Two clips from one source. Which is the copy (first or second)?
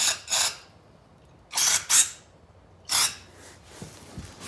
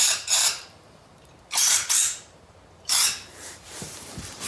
second